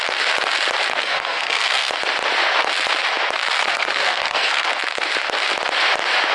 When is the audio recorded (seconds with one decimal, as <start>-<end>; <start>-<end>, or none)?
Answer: 0.0-0.9; 1.9-3.6; 4.7-6.3

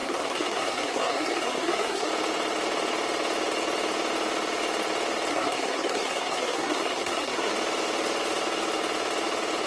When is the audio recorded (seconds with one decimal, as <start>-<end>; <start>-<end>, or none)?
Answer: 2.1-5.3; 7.5-9.7